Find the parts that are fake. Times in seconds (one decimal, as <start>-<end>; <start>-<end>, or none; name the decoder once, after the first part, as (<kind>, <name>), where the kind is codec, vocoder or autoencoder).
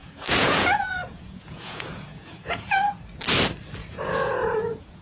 0.0-3.0 (vocoder, Vocos); 3.8-5.0